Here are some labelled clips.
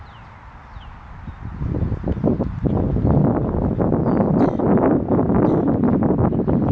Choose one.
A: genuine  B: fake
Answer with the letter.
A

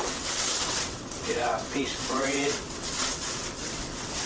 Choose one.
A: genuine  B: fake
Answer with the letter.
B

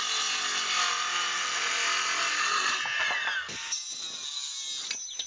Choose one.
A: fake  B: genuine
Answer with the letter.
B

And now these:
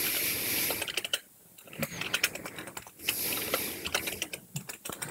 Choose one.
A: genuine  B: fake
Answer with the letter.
A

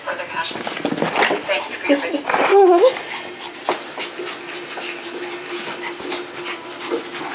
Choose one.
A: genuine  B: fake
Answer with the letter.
A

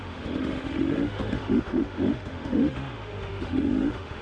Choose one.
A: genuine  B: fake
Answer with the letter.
B